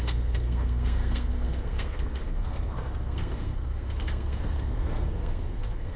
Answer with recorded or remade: remade